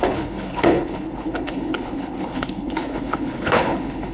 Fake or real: fake